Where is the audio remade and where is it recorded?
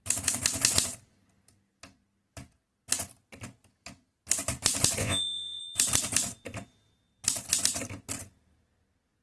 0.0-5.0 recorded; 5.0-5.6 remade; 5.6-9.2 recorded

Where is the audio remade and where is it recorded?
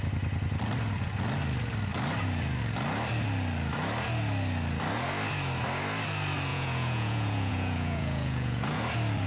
0.0-6.5 recorded; 6.5-8.8 remade; 8.8-9.3 recorded